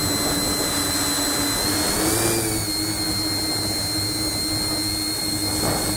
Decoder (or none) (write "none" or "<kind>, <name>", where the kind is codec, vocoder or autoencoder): none